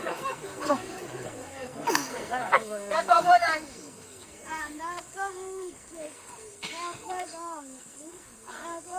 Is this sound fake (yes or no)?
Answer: yes